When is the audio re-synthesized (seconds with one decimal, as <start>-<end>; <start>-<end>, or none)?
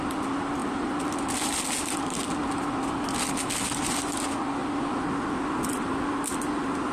none